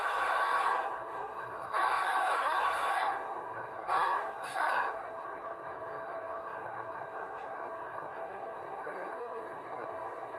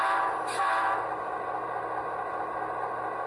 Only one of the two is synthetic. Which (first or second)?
first